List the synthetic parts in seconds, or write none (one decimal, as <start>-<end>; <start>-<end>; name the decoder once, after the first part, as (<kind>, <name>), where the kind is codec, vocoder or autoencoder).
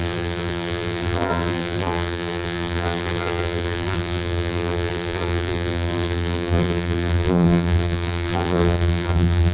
0.0-9.5 (vocoder, BigVGAN v2)